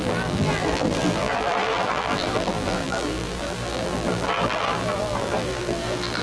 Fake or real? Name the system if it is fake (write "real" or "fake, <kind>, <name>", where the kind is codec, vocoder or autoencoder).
fake, vocoder, BigVGAN v2